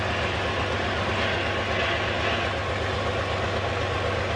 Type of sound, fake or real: real